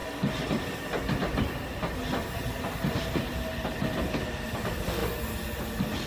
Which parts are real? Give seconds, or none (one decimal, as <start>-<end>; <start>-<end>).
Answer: 0.0-6.1